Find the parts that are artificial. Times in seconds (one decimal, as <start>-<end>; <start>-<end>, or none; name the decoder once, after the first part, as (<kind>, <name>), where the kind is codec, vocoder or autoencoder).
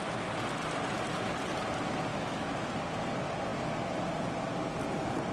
2.1-2.7 (autoencoder, DAC-VAE)